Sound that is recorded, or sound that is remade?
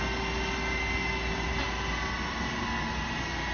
recorded